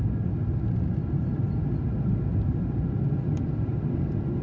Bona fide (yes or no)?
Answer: yes